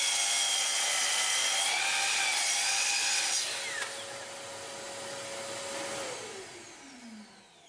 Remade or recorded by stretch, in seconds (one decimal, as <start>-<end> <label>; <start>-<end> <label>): 0.0-7.7 recorded